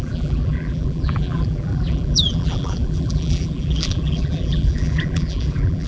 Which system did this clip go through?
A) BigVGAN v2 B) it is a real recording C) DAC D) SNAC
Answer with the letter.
A